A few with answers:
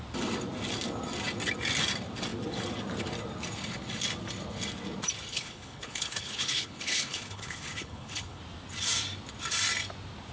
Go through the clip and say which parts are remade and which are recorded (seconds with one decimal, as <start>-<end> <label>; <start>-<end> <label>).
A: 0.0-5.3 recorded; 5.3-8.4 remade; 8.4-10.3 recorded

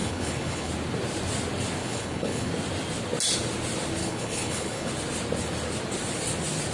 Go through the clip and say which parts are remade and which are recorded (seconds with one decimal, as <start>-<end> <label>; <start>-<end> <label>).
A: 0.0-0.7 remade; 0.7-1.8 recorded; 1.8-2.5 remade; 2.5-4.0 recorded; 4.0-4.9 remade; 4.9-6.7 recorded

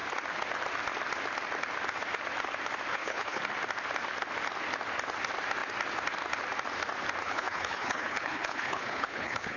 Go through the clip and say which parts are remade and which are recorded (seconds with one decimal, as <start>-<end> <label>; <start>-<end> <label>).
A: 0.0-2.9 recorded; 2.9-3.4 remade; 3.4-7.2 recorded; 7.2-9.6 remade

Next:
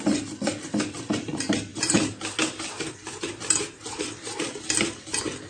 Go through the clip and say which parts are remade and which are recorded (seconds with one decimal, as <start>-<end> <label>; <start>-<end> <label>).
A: 0.0-5.5 recorded